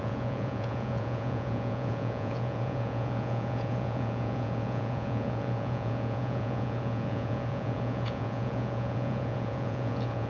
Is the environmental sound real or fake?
fake